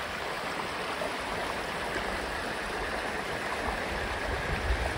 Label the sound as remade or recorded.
recorded